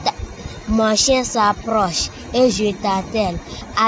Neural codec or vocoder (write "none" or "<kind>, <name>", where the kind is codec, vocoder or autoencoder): none